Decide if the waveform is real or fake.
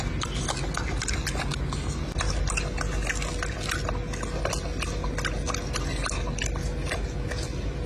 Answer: real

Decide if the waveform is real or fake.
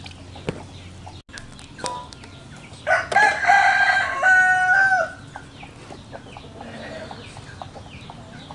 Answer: real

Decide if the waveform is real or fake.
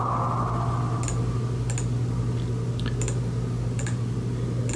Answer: real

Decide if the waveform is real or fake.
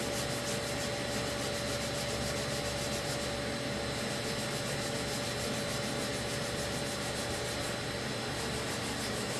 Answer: real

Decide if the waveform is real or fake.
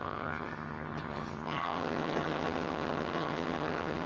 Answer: fake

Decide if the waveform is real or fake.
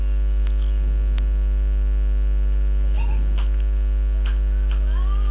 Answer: fake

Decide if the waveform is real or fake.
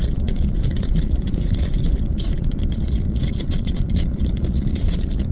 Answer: fake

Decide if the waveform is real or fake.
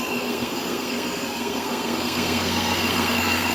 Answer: fake